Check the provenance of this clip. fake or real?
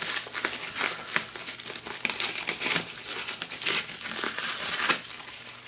real